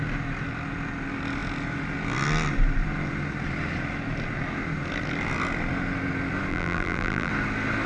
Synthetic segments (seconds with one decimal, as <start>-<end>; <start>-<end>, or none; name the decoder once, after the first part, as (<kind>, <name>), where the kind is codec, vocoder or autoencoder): 6.5-7.3 (vocoder, BigVGAN v2)